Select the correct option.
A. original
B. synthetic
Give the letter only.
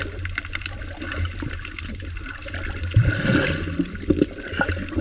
A